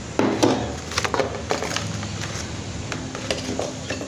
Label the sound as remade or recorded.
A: recorded